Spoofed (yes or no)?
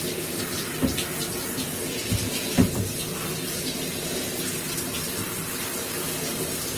yes